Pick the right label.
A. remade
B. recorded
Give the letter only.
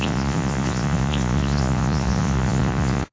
A